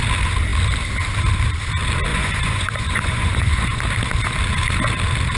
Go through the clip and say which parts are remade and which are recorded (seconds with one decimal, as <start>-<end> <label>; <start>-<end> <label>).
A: 0.0-2.1 recorded; 2.1-3.8 remade; 3.8-5.4 recorded